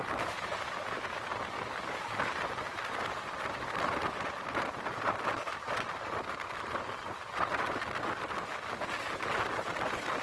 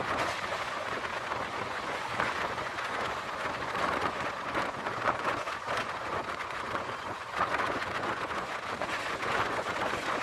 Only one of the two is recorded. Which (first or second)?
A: first